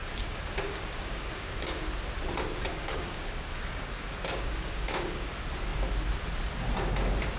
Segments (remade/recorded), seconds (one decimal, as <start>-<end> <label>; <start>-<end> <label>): 0.0-1.8 remade; 1.8-2.7 recorded; 2.7-5.3 remade; 5.3-7.4 recorded